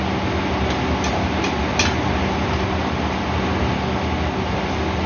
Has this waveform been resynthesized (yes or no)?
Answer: no